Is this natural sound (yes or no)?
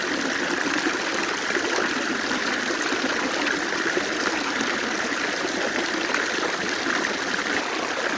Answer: yes